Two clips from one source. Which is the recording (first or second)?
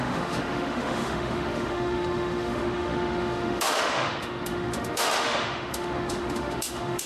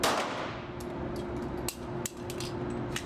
second